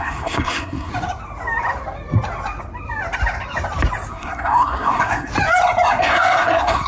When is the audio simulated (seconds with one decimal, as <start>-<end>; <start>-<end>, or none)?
0.0-0.9; 4.1-5.3; 6.0-6.9